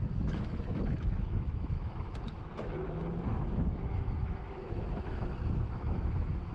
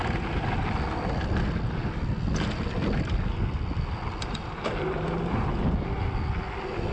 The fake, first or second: first